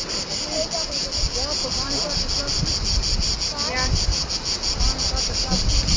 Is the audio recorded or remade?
recorded